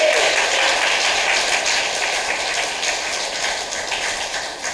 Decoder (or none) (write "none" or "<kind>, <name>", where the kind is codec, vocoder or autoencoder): none